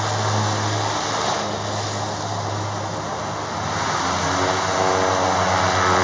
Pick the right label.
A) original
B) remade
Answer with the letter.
A